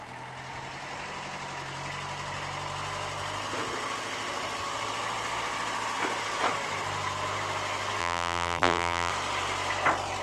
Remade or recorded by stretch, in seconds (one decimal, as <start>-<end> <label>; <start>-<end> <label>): 0.0-8.0 recorded; 8.0-9.1 remade; 9.1-10.2 recorded